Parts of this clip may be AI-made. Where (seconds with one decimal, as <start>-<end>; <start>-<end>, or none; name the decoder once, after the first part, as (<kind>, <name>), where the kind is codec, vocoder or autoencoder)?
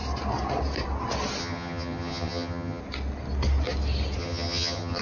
1.4-2.8 (vocoder, HiFi-GAN); 4.2-5.0